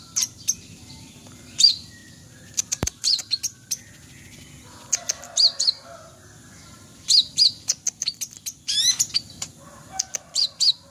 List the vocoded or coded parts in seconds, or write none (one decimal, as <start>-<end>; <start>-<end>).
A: 0.0-2.0; 2.6-3.5; 7.9-10.9